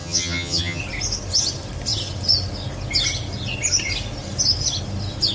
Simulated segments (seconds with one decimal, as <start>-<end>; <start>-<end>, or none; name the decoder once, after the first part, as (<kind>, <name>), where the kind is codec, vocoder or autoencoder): 0.0-0.8 (vocoder, HiFi-GAN)